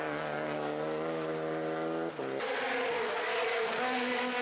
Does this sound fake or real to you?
real